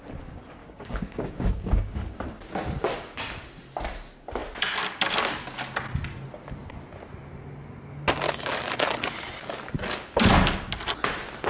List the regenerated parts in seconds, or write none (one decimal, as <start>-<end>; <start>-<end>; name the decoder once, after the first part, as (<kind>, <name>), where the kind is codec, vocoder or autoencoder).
0.6-2.2 (codec, DAC)